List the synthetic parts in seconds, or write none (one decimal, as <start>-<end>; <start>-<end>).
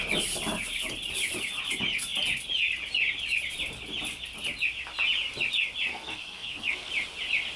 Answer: 5.9-6.9